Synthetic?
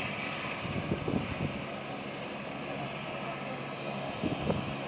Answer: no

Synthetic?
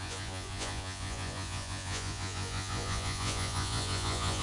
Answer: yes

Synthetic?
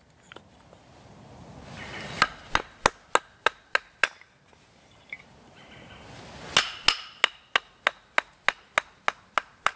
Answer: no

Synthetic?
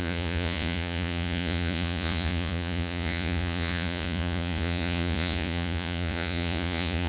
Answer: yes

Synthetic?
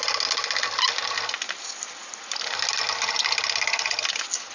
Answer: no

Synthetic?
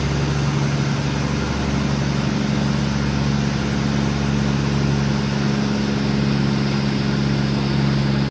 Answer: no